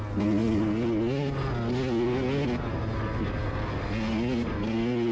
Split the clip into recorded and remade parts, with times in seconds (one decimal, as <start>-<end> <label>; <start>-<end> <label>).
0.0-5.1 recorded